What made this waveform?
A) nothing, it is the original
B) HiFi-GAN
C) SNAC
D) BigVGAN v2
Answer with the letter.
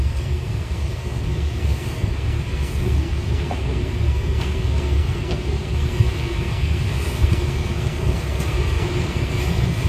C